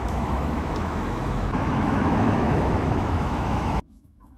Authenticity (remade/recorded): remade